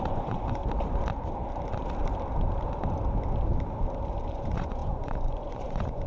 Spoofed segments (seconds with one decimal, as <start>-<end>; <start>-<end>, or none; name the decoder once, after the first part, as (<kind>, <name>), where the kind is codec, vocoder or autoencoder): 0.0-0.6 (vocoder, Vocos); 4.3-6.1